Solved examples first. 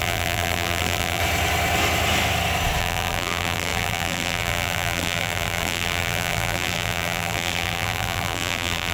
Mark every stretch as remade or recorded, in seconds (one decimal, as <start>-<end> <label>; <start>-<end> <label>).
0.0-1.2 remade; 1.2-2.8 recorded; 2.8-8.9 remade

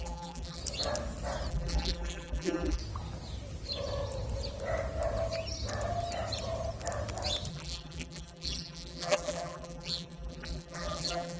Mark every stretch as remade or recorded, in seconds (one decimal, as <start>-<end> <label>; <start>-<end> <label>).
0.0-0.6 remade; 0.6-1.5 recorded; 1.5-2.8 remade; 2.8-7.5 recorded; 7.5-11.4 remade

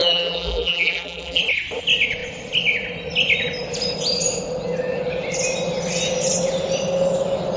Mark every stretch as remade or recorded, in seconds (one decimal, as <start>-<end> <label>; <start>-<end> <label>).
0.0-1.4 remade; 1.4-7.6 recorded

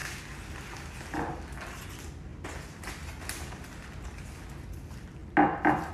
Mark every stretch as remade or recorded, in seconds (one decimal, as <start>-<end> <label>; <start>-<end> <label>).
0.0-5.9 recorded